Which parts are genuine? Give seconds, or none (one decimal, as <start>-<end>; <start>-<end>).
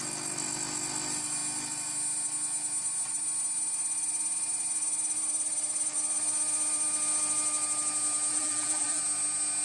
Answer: 0.0-8.3; 9.0-9.6